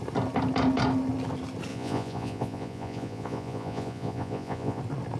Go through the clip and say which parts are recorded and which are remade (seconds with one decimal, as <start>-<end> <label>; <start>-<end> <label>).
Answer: 0.0-1.7 recorded; 1.7-4.8 remade; 4.8-5.2 recorded